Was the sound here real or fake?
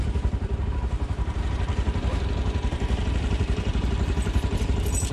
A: real